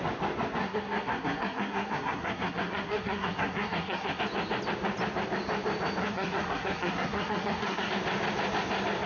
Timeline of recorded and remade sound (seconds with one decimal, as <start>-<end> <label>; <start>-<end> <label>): 0.0-0.6 recorded; 0.6-4.2 remade; 4.2-6.0 recorded; 6.0-7.9 remade; 7.9-9.1 recorded